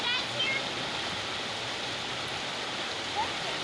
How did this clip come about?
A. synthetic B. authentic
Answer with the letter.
B